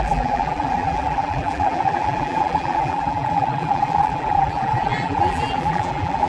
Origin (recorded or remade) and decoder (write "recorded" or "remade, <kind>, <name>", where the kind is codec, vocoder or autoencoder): remade, vocoder, BigVGAN v2